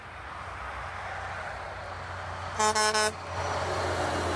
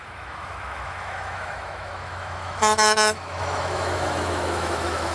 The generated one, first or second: second